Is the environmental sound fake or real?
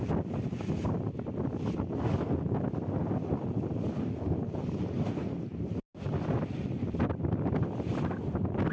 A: real